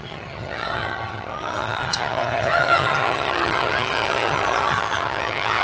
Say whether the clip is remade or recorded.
remade